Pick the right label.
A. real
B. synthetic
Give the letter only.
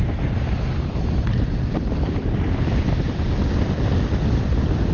B